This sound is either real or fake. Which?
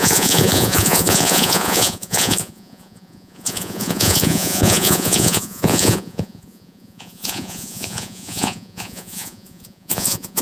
fake